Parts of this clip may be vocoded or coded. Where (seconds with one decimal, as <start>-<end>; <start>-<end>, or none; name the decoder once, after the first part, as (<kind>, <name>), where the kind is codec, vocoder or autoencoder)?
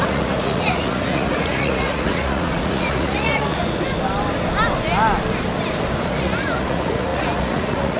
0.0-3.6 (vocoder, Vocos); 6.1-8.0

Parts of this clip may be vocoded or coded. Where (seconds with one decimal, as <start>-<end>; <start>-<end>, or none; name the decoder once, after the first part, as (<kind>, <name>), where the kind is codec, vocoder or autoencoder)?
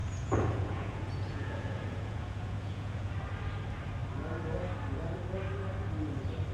0.0-3.1 (vocoder, Vocos)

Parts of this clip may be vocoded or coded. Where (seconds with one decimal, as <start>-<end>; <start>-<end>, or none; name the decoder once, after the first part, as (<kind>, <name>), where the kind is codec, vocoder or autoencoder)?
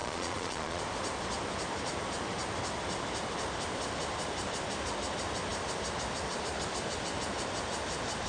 0.0-0.8 (vocoder, Vocos)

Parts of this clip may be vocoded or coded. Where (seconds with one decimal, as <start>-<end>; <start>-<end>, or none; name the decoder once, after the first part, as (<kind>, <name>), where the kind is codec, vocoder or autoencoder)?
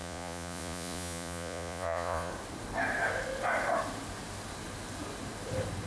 0.0-2.3 (vocoder, Vocos)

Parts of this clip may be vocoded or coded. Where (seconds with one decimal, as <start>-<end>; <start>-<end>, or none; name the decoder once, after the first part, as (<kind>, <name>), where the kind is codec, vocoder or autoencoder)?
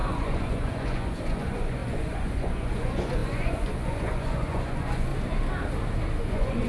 0.0-5.1 (vocoder, Vocos); 6.2-6.7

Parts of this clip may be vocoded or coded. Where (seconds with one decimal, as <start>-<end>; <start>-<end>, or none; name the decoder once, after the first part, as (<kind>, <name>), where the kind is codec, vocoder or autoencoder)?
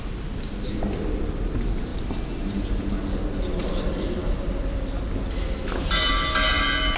none